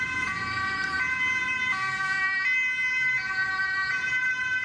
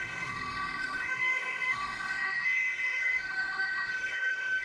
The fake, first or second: second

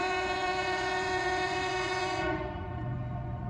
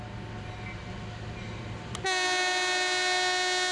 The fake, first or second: first